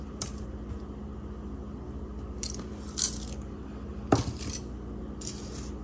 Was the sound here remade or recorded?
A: recorded